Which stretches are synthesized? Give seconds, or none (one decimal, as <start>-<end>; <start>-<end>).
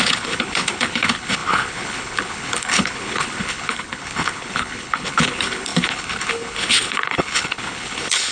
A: 0.0-8.3